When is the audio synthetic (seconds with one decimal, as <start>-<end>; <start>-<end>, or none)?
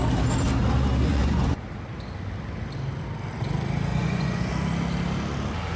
1.1-1.6; 3.9-4.5